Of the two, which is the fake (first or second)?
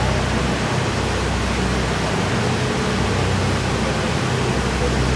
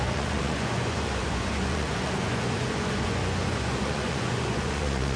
second